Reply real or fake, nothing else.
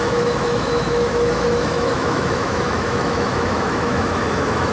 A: fake